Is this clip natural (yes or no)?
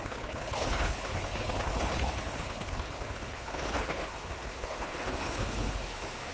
no